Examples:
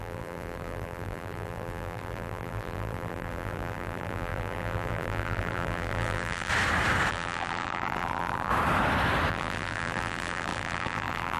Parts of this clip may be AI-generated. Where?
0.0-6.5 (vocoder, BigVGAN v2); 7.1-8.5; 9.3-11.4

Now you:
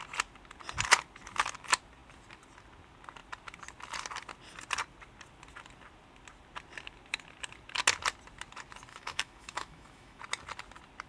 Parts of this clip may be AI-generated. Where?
8.9-10.2 (autoencoder, DAC-VAE)

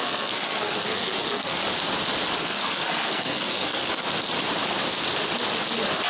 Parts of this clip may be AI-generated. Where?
0.0-1.6 (codec, SNAC); 2.4-3.8